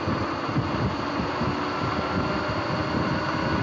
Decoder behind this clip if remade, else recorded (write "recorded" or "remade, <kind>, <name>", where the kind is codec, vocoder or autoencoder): recorded